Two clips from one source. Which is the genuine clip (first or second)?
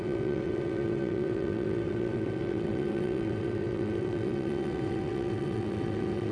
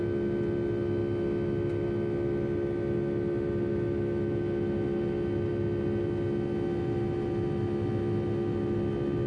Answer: second